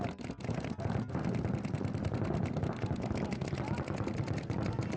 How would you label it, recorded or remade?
recorded